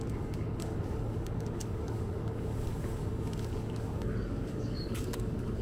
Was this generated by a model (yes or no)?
yes